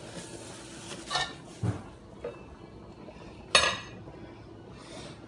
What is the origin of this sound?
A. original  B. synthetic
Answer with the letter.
A